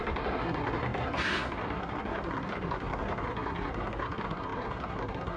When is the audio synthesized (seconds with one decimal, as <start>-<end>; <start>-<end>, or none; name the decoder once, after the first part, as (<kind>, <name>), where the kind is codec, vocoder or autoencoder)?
0.0-5.4 (codec, SNAC)